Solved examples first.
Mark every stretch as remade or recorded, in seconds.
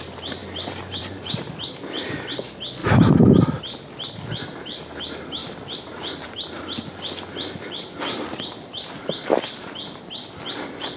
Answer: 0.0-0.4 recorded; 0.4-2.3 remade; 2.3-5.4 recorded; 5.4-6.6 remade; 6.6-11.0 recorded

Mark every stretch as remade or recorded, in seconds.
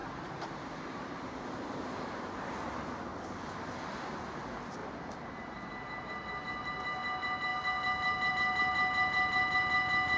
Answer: 0.0-2.4 remade; 2.4-4.8 recorded; 4.8-5.6 remade; 5.6-10.2 recorded